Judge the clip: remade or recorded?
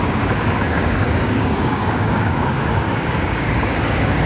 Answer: remade